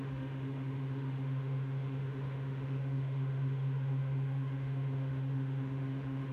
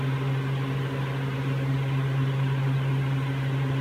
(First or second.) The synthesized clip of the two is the first